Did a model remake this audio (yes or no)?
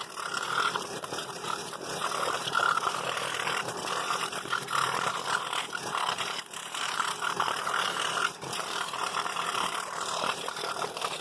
yes